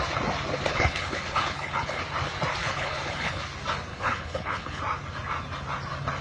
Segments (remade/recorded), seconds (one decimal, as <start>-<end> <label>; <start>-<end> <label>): 0.0-0.7 recorded; 0.7-2.0 remade; 2.0-2.6 recorded; 2.6-3.4 remade; 3.4-3.9 recorded; 3.9-4.8 remade; 4.8-6.2 recorded